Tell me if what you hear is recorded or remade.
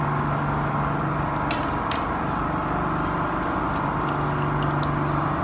recorded